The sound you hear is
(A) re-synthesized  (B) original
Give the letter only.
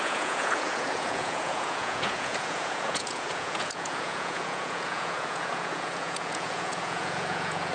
A